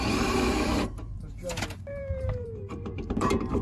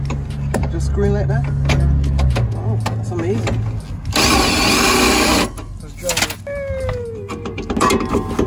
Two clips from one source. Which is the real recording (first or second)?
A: second